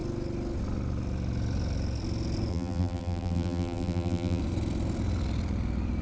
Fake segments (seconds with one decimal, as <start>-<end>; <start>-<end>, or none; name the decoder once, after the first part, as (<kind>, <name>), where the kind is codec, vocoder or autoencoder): 2.5-4.4 (vocoder, BigVGAN v2)